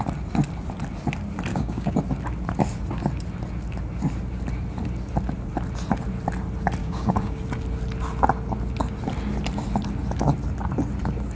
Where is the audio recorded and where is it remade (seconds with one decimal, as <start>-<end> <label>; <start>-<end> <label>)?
0.0-1.5 recorded; 1.5-2.0 remade; 2.0-6.8 recorded; 6.8-7.4 remade; 7.4-11.3 recorded